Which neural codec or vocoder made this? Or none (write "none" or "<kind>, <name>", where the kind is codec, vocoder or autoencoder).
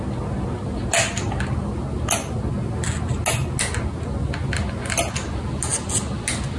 none